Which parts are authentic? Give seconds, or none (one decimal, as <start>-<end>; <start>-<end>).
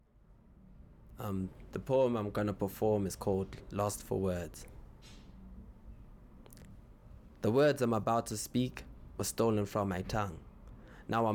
0.0-11.3